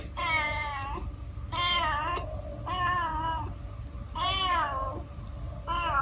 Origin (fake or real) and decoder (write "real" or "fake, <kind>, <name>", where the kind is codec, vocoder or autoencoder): real